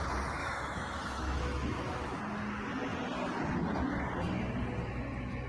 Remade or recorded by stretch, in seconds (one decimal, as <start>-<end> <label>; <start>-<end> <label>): 0.0-0.4 recorded; 0.4-2.2 remade; 2.2-5.5 recorded